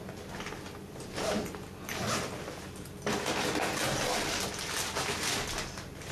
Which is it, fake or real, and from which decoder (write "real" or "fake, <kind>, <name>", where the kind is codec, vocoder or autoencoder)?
real